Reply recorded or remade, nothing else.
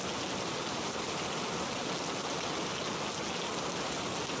recorded